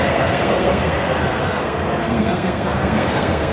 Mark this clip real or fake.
fake